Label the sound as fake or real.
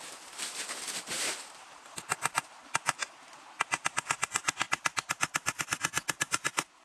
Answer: real